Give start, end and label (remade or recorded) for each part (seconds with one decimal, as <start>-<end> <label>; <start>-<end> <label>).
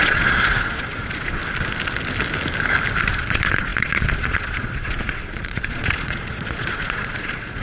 0.0-1.4 remade; 1.4-3.1 recorded; 3.1-7.6 remade